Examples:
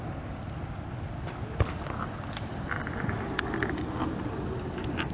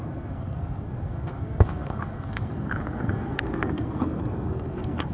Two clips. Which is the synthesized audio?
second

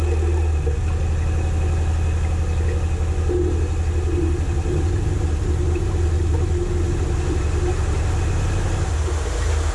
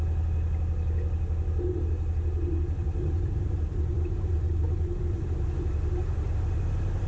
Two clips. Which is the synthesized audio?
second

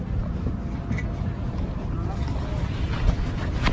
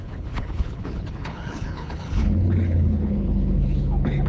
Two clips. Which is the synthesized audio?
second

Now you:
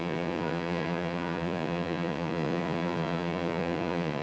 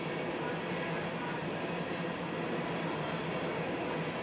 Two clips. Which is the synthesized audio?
first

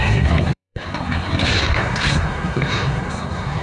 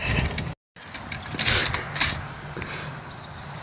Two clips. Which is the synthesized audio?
first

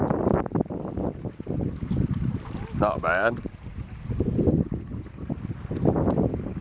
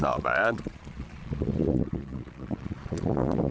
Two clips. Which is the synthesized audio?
second